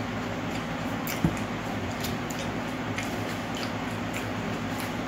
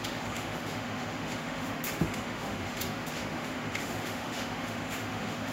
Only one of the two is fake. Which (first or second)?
second